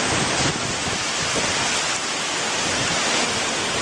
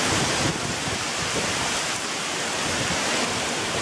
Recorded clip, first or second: first